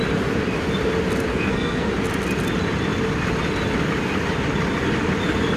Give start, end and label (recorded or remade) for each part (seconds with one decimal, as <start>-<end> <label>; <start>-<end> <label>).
0.0-1.3 recorded; 1.3-1.9 remade; 1.9-5.6 recorded